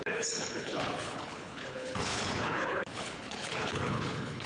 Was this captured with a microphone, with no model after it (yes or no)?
no